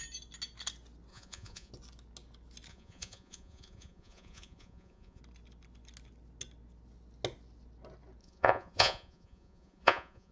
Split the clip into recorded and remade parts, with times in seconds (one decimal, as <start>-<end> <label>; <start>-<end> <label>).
0.0-1.1 recorded; 1.1-1.7 remade; 1.7-2.7 recorded; 2.7-5.2 remade; 5.2-8.2 recorded; 8.2-10.3 remade